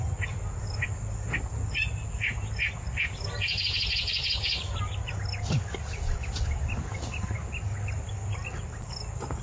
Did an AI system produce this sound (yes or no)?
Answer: no